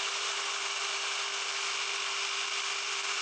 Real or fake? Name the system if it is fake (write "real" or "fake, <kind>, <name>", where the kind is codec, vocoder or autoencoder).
real